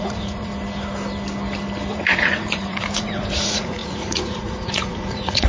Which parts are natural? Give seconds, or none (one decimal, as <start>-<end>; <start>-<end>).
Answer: 0.5-1.9